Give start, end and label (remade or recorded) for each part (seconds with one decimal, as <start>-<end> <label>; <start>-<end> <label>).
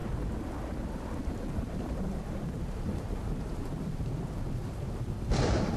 0.0-0.9 recorded; 0.9-5.8 remade